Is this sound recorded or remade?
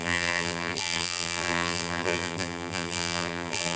remade